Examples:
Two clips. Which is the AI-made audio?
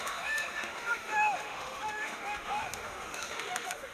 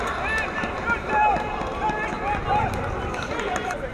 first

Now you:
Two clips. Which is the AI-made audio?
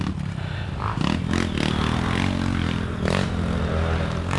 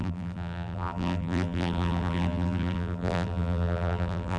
second